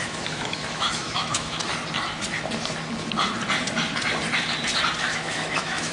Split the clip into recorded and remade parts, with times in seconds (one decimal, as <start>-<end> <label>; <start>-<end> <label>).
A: 0.0-1.6 remade; 1.6-5.1 recorded; 5.1-5.9 remade

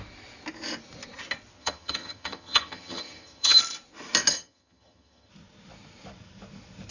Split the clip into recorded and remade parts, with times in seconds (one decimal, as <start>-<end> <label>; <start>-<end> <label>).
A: 0.0-1.6 recorded; 1.6-3.6 remade; 3.6-4.3 recorded; 4.3-5.3 remade; 5.3-6.9 recorded

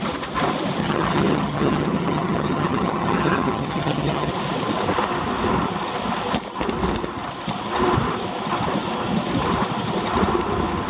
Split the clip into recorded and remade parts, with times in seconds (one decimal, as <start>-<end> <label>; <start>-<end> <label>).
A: 0.0-0.8 recorded; 0.8-4.3 remade; 4.3-10.9 recorded